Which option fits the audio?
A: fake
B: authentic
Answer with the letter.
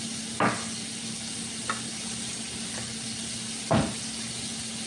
B